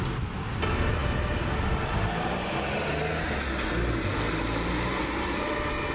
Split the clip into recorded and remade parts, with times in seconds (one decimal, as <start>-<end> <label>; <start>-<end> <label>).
0.0-5.9 recorded